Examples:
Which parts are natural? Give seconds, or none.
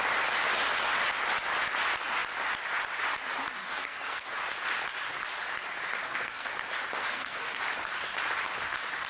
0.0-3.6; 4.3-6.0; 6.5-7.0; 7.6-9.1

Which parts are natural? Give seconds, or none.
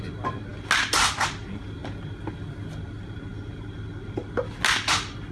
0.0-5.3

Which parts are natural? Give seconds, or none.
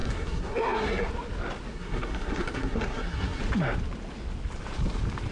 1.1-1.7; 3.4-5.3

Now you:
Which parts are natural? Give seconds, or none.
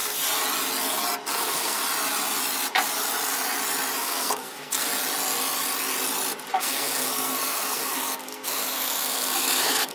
0.0-1.3; 1.8-4.0; 4.9-6.5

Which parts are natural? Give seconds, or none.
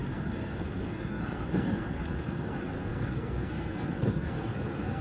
none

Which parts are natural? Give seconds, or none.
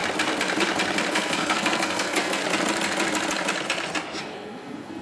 0.0-1.1; 2.4-4.2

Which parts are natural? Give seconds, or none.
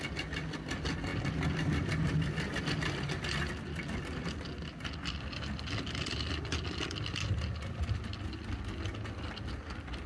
0.0-10.1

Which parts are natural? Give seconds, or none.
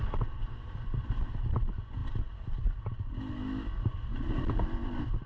0.0-5.3